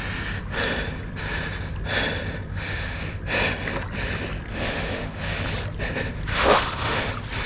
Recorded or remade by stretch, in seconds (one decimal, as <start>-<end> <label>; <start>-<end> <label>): 0.0-2.5 recorded; 2.5-3.2 remade; 3.2-4.5 recorded; 4.5-5.4 remade; 5.4-6.3 recorded; 6.3-7.1 remade; 7.1-7.5 recorded